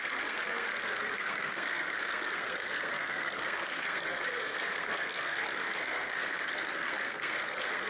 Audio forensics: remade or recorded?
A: remade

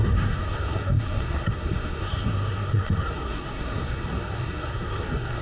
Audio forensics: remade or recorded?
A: remade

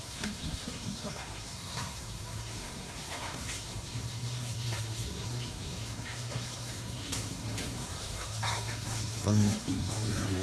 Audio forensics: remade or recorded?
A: remade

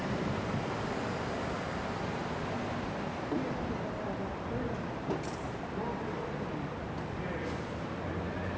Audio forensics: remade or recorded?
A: recorded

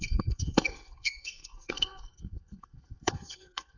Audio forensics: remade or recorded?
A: remade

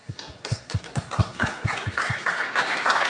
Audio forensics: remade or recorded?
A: remade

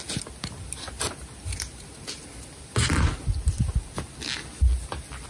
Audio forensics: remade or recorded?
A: recorded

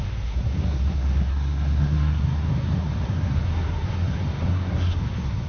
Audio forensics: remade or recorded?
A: remade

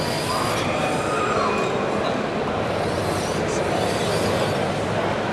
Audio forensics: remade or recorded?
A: recorded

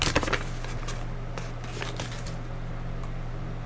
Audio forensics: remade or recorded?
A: recorded